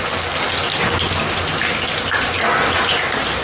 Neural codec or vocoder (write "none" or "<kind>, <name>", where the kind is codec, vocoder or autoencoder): none